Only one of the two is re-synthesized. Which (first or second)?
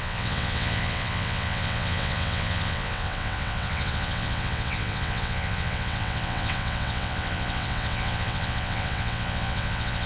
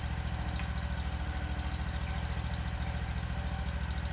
first